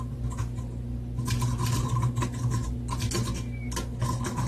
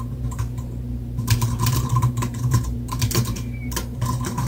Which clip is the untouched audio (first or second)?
first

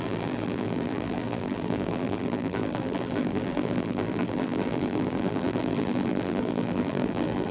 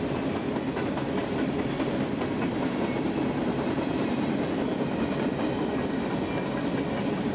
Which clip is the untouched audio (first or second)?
second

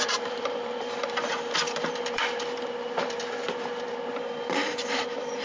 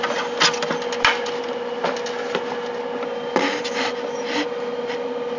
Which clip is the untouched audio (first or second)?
second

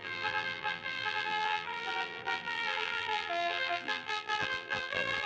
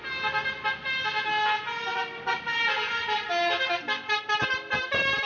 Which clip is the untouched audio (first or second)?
second